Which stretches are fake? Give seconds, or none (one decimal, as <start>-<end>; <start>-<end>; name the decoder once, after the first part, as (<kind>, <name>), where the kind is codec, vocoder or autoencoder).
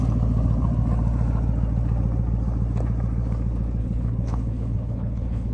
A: 3.8-5.5 (codec, HILCodec)